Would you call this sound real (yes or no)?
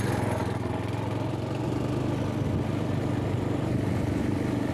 yes